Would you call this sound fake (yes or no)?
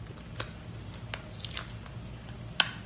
no